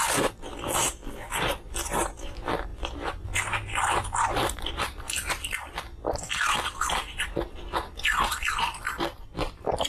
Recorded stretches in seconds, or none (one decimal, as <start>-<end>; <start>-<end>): 0.0-9.9